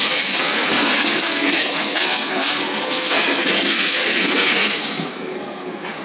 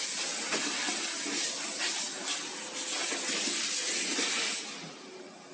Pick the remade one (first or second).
first